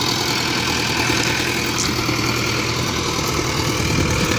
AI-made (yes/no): no